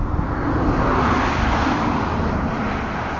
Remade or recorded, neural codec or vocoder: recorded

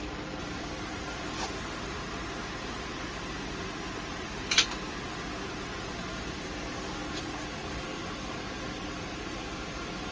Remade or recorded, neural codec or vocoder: remade, vocoder, BigVGAN v2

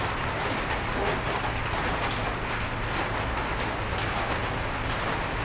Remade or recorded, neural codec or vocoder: recorded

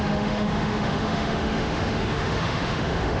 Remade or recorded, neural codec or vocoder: remade, autoencoder, DAC-VAE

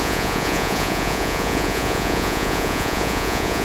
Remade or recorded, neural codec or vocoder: remade, vocoder, Vocos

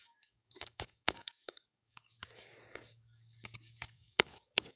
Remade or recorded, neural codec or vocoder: remade, codec, DAC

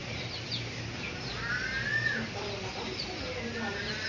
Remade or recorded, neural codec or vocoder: recorded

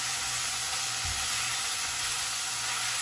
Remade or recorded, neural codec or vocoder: remade, vocoder, Vocos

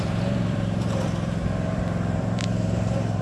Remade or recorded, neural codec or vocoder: remade, vocoder, BigVGAN v2